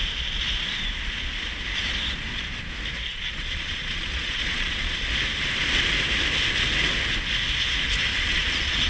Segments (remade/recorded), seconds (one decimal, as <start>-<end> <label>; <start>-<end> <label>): 0.0-3.1 recorded; 3.1-5.1 remade; 5.1-8.1 recorded; 8.1-8.9 remade